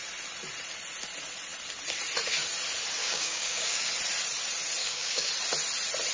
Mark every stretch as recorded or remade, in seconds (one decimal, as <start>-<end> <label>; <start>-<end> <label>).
0.0-3.0 recorded; 3.0-3.9 remade; 3.9-4.8 recorded; 4.8-5.3 remade; 5.3-6.1 recorded